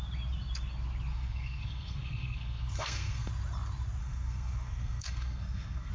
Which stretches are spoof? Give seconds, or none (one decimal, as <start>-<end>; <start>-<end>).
1.1-3.3; 4.0-5.9